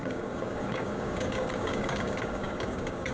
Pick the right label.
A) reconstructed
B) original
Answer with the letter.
A